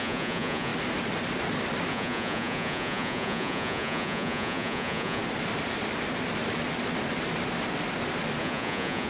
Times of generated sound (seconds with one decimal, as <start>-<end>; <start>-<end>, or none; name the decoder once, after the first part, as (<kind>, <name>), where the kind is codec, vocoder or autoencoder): 0.0-0.7 (vocoder, Vocos); 1.9-5.2; 8.4-9.1